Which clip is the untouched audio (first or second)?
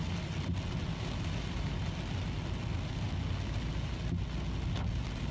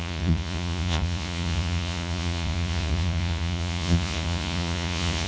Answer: first